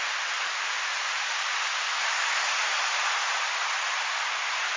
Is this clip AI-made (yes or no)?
no